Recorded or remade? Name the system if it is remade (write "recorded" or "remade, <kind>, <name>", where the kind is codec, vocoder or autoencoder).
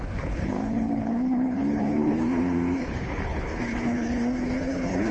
remade, codec, HILCodec